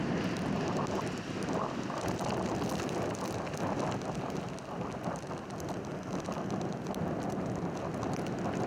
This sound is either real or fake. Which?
real